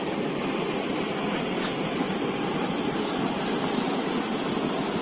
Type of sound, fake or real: real